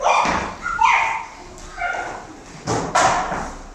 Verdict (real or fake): real